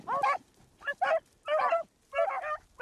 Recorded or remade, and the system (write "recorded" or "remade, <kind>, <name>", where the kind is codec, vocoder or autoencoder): recorded